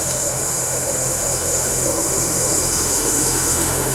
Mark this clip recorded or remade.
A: remade